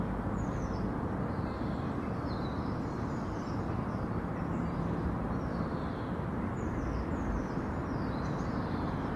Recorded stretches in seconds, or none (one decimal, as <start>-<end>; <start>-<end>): none